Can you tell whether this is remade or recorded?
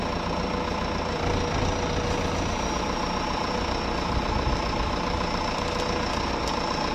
recorded